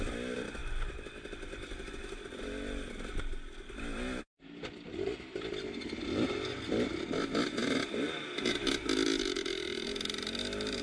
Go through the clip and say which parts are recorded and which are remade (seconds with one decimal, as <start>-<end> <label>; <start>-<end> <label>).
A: 0.0-10.8 recorded